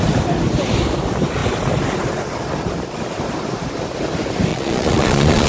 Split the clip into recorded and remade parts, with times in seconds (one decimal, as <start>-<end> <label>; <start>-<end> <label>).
0.0-4.5 recorded; 4.5-5.5 remade